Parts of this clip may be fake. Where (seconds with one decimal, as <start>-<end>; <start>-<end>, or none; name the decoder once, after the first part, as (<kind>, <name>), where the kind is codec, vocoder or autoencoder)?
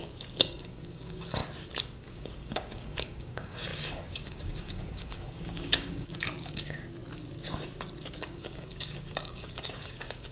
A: 0.0-1.4 (codec, DAC); 2.0-7.0; 8.1-10.3